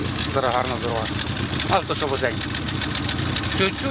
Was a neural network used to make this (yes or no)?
yes